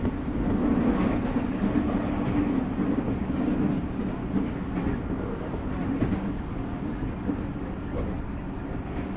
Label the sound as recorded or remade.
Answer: recorded